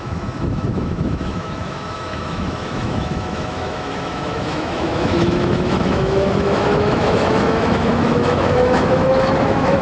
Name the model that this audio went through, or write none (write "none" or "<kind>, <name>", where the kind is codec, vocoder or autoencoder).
autoencoder, DAC-VAE